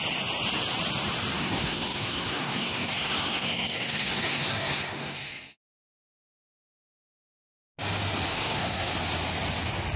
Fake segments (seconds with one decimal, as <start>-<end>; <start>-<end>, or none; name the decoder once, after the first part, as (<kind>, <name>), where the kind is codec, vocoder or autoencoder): 1.4-5.7 (codec, SNAC); 8.3-8.9